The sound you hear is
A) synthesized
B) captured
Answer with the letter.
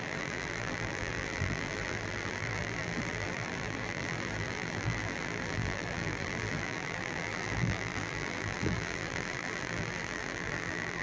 A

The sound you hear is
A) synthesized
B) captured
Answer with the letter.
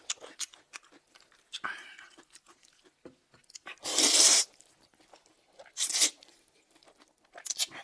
B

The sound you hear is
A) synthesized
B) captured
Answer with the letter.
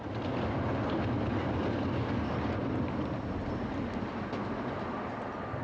B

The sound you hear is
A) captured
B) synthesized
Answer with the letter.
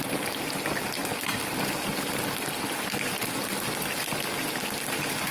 A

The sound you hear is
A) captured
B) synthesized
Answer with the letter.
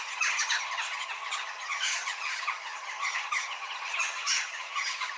B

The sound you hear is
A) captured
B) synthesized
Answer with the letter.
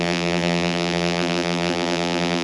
B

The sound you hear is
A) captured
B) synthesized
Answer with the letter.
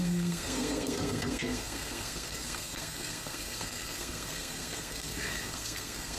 B